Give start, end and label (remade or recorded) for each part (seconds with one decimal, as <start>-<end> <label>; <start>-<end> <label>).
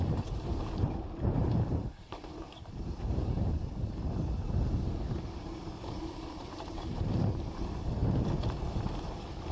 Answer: 0.0-8.0 remade; 8.0-9.5 recorded